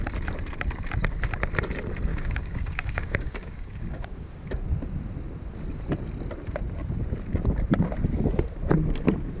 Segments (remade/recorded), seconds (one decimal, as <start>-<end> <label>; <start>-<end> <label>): 0.0-2.1 recorded; 2.1-4.3 remade; 4.3-9.4 recorded